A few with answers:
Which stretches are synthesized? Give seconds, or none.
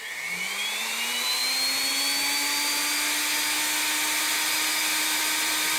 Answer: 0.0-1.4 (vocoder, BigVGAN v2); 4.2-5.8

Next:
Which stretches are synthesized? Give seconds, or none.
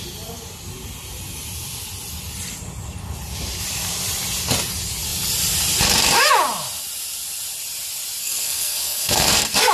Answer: 8.2-9.7 (codec, SNAC)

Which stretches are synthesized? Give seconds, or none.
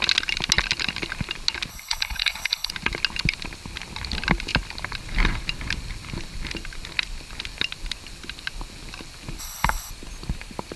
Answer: 1.7-2.7 (codec, HILCodec); 9.4-9.9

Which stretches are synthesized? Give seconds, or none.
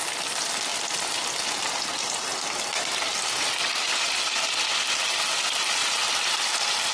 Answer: 2.3-5.0 (vocoder, BigVGAN v2); 5.8-6.9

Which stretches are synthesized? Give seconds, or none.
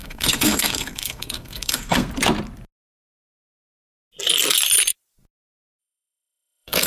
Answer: 0.0-2.1 (codec, SNAC); 5.8-6.9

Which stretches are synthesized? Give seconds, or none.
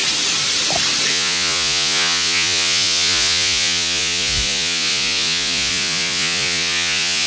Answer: 1.1-7.3 (vocoder, Vocos)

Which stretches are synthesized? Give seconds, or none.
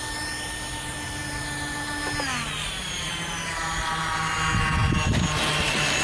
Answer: none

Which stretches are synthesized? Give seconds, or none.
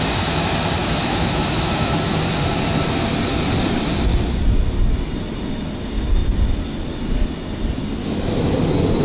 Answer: 0.8-2.3 (autoencoder, DAC-VAE); 8.0-8.5